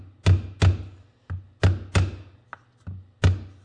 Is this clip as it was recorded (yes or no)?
yes